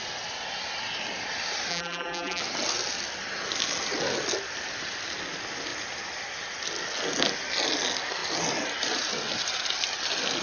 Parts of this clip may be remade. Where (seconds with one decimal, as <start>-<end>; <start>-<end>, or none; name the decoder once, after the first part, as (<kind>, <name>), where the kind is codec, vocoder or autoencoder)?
1.7-2.4 (vocoder, BigVGAN v2)